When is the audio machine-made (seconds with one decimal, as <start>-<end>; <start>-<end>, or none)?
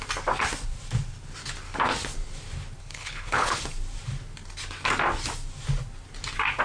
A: 2.8-3.6